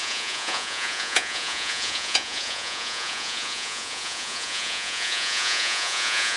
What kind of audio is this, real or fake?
fake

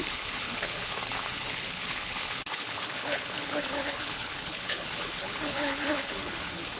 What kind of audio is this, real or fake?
fake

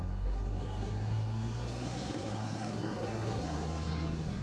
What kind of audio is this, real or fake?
fake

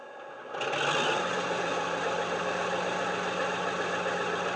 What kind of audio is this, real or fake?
real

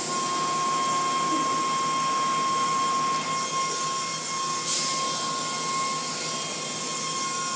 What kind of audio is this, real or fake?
real